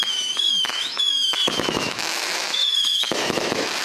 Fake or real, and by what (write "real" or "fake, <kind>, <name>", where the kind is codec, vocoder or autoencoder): fake, autoencoder, DAC-VAE